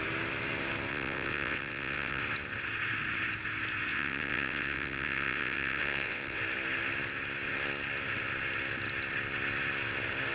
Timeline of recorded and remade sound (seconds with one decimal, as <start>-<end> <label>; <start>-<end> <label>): 0.0-0.9 recorded; 0.9-2.2 remade; 2.2-3.9 recorded; 3.9-6.4 remade; 6.4-10.3 recorded